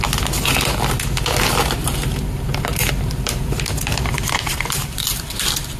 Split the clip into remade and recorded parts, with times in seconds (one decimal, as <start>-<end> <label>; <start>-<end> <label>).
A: 0.0-1.8 recorded; 1.8-5.3 remade; 5.3-5.8 recorded